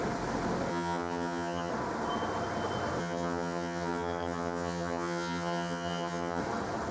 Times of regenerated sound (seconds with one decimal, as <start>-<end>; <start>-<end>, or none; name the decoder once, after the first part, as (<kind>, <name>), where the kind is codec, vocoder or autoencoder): 0.7-1.7 (vocoder, HiFi-GAN); 3.0-6.4

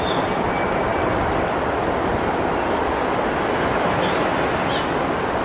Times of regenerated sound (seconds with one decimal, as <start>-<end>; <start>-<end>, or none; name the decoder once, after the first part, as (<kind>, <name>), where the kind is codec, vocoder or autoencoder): none

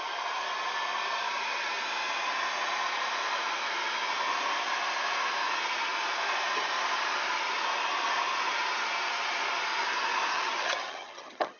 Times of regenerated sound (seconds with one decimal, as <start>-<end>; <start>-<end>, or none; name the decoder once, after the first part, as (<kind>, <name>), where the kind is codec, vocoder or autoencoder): 10.3-11.6 (vocoder, HiFi-GAN)

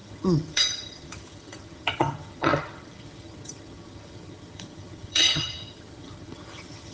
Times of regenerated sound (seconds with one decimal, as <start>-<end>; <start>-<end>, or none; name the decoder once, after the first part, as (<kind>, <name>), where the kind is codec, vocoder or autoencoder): 0.0-6.9 (vocoder, HiFi-GAN)